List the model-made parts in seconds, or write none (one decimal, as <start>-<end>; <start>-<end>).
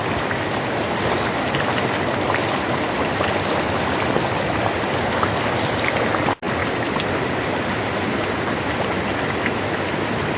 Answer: none